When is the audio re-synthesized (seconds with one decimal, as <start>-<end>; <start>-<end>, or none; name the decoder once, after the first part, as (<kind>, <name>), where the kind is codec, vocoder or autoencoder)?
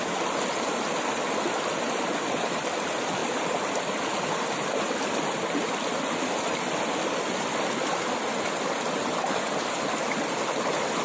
none